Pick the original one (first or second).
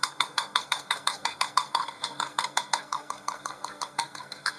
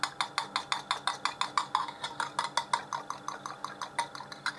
second